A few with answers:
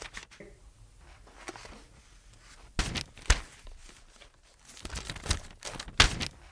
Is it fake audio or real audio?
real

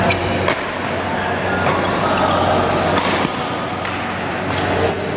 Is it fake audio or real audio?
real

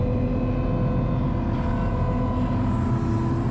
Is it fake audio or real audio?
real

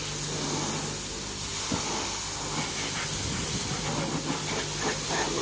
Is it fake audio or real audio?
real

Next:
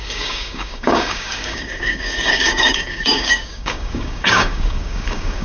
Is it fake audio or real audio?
fake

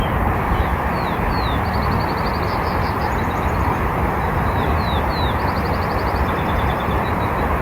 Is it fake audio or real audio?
real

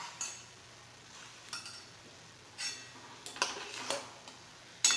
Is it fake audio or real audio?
real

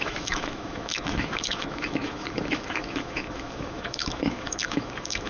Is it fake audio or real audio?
fake